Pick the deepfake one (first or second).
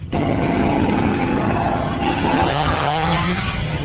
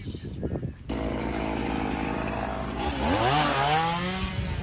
first